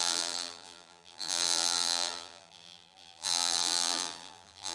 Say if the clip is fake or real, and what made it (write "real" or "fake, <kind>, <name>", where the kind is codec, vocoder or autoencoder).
fake, vocoder, BigVGAN v2